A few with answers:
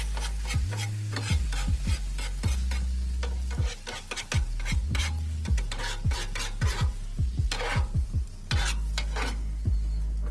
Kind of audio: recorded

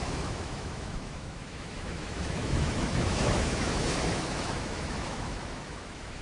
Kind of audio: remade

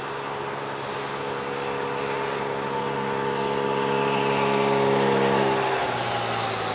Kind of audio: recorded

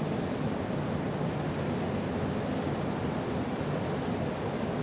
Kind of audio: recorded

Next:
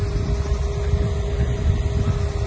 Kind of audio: recorded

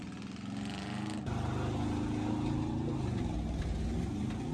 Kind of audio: recorded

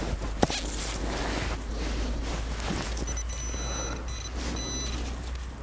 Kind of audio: recorded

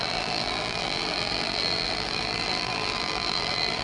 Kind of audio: remade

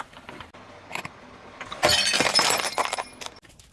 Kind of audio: recorded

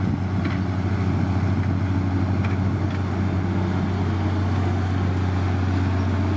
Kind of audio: recorded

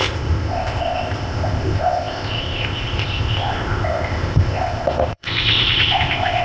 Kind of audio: remade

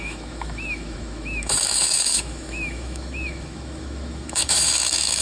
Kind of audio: remade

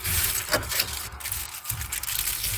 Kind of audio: recorded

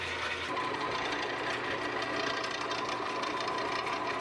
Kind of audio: recorded